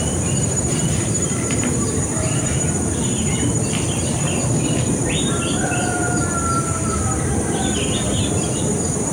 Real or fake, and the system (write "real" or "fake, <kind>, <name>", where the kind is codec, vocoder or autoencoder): fake, vocoder, BigVGAN v2